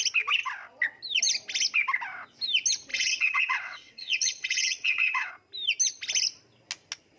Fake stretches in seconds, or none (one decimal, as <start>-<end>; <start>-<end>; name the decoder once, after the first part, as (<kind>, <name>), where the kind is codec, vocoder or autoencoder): 2.9-5.3 (vocoder, WaveNeXt)